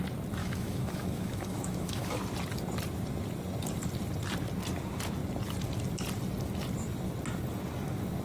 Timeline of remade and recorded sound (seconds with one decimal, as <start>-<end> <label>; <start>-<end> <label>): 0.0-0.4 recorded; 0.4-2.2 remade; 2.2-8.2 recorded

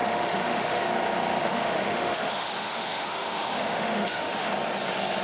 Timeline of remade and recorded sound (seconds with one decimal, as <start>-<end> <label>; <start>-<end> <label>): 0.0-0.8 remade; 0.8-1.4 recorded; 1.4-4.5 remade; 4.5-5.2 recorded

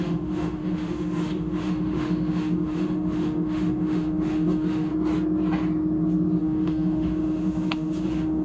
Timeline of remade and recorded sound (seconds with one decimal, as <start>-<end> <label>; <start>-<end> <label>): 0.0-4.9 remade; 4.9-6.4 recorded; 6.4-8.4 remade

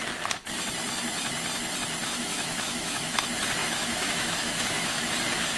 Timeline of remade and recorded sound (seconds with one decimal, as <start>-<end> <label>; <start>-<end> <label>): 0.0-2.0 recorded; 2.0-3.2 remade; 3.2-3.6 recorded; 3.6-5.1 remade; 5.1-5.6 recorded

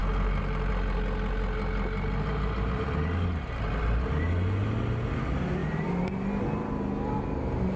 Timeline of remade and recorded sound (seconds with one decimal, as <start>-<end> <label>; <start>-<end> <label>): 0.0-7.8 recorded

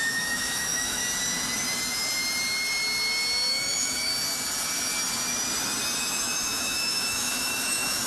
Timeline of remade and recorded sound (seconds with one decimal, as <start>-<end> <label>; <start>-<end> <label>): 0.0-1.0 remade; 1.0-3.5 recorded; 3.5-4.1 remade; 4.1-6.0 recorded; 6.0-8.1 remade